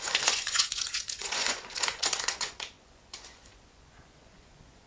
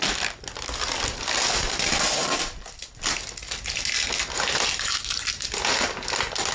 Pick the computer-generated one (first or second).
first